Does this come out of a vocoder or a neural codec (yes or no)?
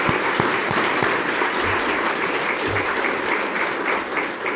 yes